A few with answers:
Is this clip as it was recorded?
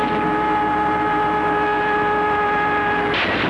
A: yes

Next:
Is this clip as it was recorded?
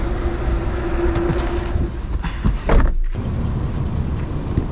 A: yes